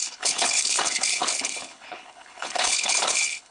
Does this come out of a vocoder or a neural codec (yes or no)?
yes